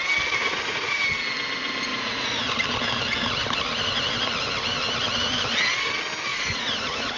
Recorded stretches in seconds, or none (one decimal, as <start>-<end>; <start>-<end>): 0.0-0.4; 1.0-1.9; 2.5-6.3